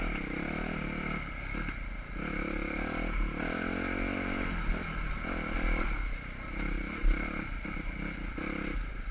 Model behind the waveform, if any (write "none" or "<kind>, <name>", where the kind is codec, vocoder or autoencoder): none